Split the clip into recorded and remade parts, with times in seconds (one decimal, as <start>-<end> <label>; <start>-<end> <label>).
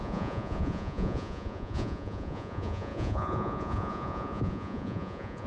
0.0-5.5 remade